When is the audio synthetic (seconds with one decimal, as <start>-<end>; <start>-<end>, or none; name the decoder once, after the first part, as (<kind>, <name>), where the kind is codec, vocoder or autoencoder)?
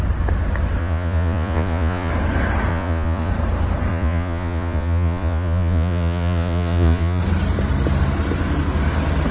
0.8-2.1 (vocoder, Vocos); 2.7-3.3; 3.9-7.2